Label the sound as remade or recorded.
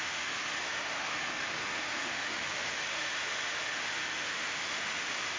remade